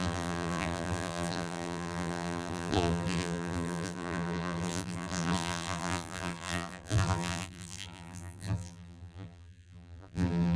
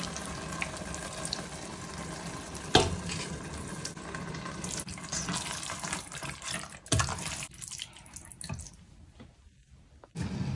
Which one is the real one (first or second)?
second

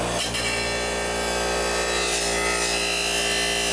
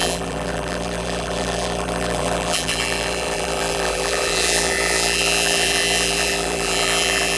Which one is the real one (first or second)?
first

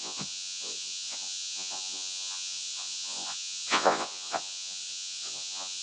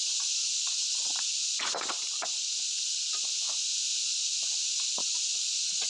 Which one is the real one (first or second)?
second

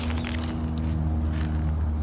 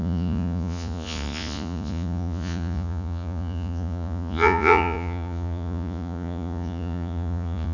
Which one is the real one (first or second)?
first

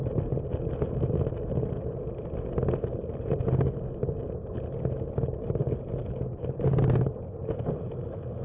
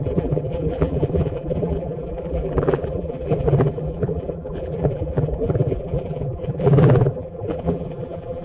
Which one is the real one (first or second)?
first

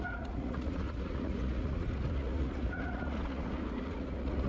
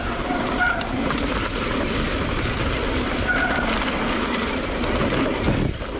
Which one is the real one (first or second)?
second